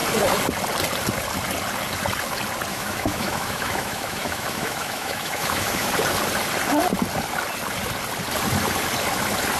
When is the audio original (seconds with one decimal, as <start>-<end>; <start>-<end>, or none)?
0.0-2.7; 5.9-9.6